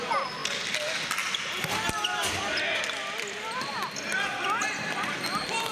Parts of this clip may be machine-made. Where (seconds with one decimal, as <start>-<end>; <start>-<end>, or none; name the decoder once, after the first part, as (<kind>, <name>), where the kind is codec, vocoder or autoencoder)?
none